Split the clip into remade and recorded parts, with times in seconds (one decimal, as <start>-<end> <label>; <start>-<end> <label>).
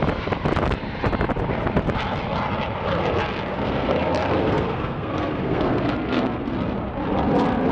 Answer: 0.0-3.5 recorded; 3.5-6.4 remade; 6.4-7.7 recorded